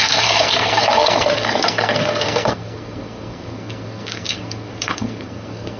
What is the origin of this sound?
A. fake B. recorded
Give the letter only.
A